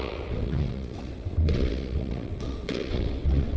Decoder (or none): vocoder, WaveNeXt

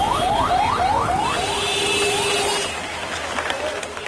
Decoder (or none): none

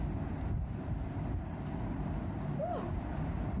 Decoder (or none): none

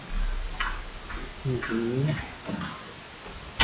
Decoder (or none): none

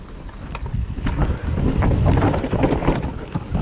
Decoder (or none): none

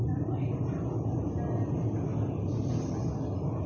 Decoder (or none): none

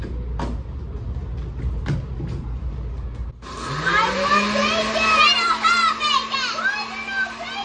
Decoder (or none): none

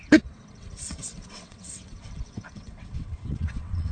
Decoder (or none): vocoder, WaveNeXt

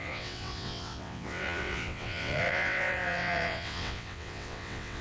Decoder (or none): vocoder, WaveNeXt